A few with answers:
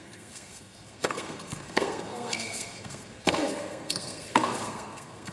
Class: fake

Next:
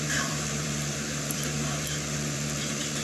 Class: fake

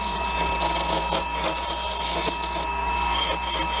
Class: real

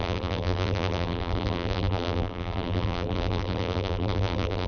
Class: fake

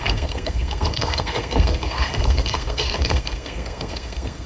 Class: fake